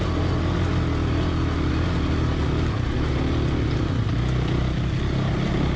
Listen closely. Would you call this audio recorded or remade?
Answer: recorded